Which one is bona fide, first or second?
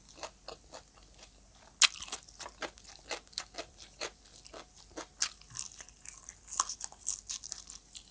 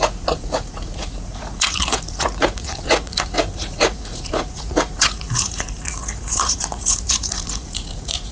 first